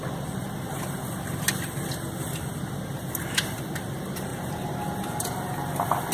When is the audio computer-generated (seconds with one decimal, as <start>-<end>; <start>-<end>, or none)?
none